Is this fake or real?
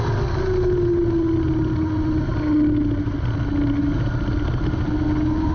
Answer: real